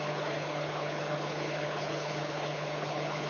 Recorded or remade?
remade